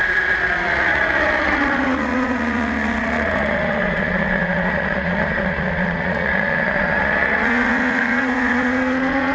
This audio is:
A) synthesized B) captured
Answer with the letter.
A